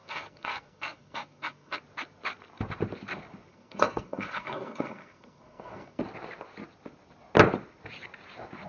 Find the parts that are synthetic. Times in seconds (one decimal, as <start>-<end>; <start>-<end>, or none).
0.0-1.8; 3.5-6.0